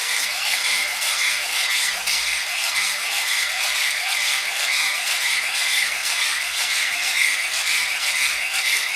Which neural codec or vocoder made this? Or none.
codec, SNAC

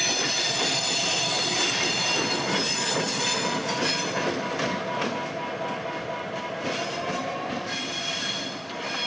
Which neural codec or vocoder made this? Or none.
none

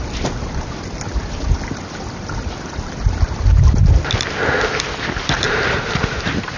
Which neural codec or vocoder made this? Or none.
none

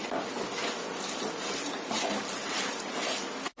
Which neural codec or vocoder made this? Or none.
none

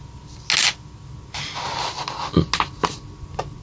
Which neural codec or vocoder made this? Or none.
none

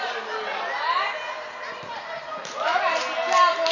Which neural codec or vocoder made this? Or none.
none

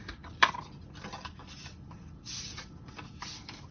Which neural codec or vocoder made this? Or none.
none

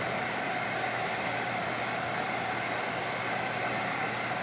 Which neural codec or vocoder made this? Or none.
none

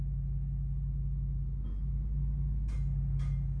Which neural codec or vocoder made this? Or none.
none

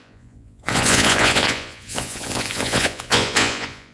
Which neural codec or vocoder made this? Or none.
vocoder, Vocos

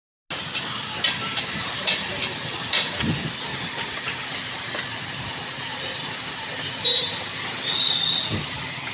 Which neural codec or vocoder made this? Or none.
none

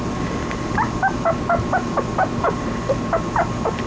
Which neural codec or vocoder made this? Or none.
none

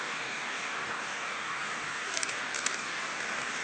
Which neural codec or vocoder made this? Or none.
codec, DAC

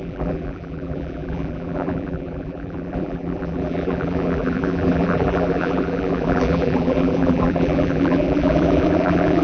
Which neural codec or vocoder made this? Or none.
vocoder, BigVGAN v2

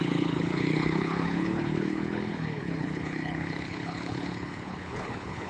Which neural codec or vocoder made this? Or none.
codec, HILCodec